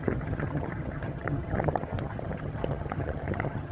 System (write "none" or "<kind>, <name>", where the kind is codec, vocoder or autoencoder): vocoder, HiFi-GAN